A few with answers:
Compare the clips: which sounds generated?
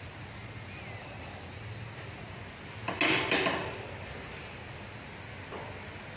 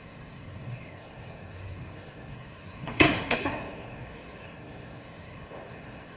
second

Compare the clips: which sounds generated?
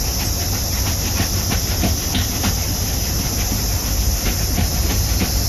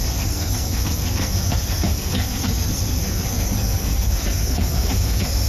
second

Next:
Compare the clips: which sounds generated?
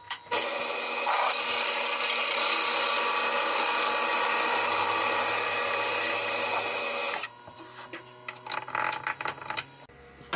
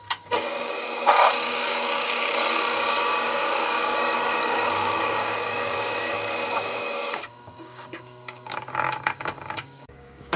second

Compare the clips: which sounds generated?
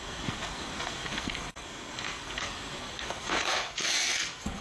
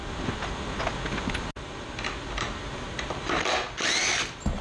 first